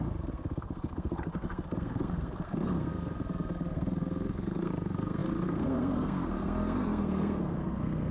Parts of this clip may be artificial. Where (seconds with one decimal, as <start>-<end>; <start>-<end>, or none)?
0.0-8.1